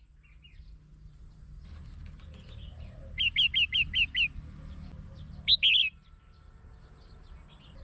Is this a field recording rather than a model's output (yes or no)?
yes